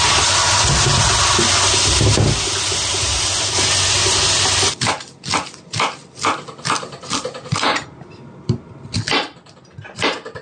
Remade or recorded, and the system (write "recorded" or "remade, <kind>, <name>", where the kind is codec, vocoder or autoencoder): recorded